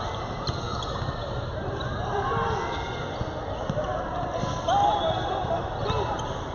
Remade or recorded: recorded